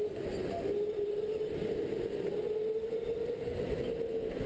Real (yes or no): yes